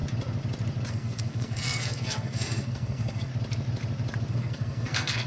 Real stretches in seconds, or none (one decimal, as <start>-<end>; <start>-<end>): 0.0-0.9; 3.3-4.3